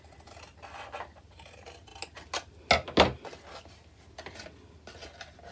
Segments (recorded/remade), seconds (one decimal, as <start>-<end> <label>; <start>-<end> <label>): 0.0-5.5 recorded